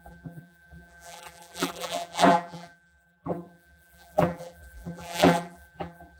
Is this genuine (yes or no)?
no